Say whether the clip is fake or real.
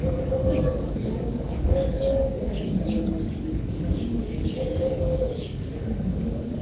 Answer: fake